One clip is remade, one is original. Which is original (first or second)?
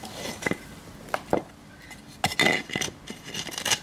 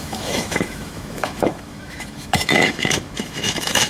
first